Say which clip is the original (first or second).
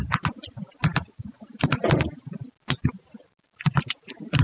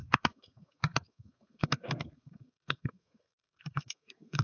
first